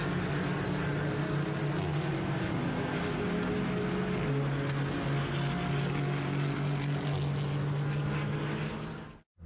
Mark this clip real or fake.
real